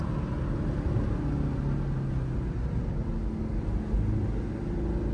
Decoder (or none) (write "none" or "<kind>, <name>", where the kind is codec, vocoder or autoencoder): none